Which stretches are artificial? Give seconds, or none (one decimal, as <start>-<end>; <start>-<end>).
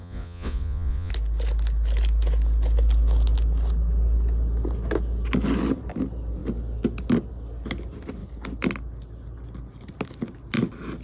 0.0-1.1